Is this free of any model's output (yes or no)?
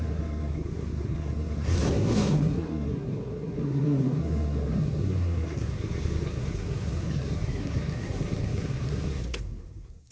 no